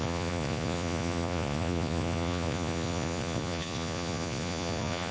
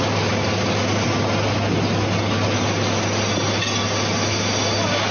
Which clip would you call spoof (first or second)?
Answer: first